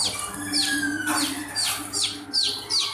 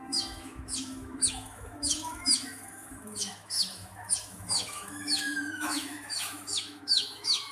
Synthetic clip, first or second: second